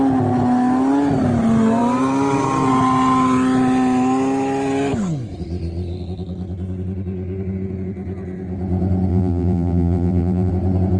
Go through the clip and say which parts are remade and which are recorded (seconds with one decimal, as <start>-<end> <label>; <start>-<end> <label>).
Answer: 0.0-9.1 recorded; 9.1-10.5 remade; 10.5-11.0 recorded